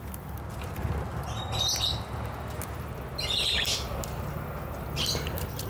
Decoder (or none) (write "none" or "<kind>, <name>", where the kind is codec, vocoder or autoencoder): none